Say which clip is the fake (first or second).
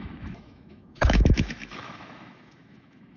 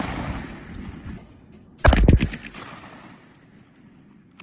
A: first